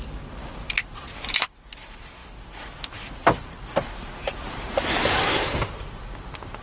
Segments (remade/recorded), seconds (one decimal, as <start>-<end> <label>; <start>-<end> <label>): 0.0-6.6 recorded